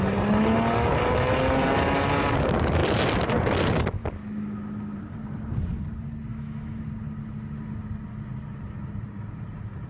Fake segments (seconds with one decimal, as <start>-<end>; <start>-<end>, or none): 6.3-6.9